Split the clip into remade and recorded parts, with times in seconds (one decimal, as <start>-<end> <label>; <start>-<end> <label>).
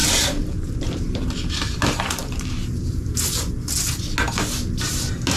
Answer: 0.0-3.2 remade; 3.2-5.4 recorded